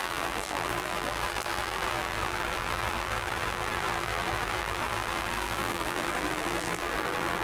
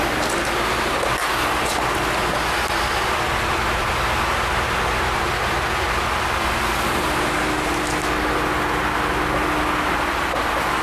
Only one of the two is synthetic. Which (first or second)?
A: first